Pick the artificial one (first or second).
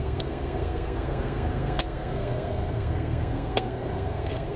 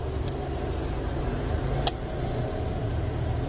first